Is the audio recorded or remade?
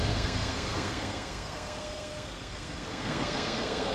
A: remade